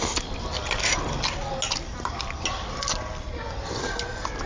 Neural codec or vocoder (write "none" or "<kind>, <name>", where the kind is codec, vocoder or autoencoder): none